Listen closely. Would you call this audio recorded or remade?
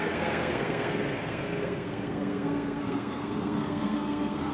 remade